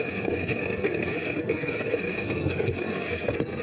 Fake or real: fake